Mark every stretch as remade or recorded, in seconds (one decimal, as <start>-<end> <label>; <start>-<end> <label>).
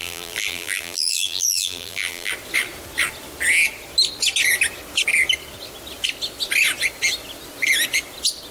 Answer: 0.0-2.3 remade; 2.3-8.5 recorded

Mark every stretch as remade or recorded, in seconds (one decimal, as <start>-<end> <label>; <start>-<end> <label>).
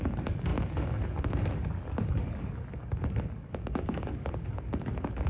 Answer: 0.0-5.3 remade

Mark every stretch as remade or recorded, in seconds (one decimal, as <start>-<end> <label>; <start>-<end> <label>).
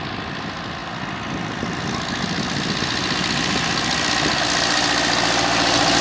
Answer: 0.0-6.0 recorded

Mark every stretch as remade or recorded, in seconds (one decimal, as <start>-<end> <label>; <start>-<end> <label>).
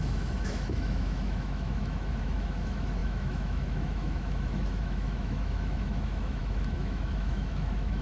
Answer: 0.0-8.0 remade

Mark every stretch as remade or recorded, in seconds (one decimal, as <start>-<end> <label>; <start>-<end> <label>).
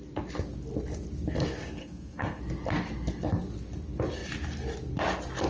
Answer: 0.0-1.8 recorded; 1.8-2.4 remade; 2.4-5.5 recorded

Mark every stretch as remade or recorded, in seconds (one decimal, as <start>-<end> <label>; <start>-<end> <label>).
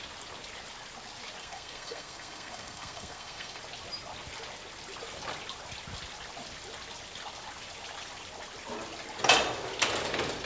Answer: 0.0-1.4 recorded; 1.4-3.6 remade; 3.6-10.5 recorded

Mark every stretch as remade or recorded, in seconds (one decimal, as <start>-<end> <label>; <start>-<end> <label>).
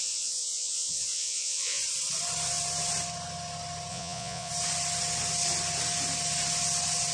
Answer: 0.0-1.8 remade; 1.8-3.9 recorded; 3.9-4.5 remade; 4.5-7.1 recorded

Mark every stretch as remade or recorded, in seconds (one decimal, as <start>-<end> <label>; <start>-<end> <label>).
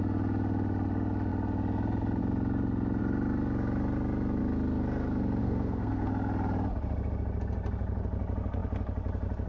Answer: 0.0-5.4 recorded; 5.4-6.1 remade; 6.1-9.5 recorded